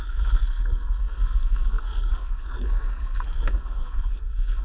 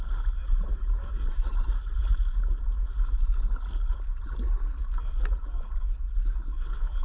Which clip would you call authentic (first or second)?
second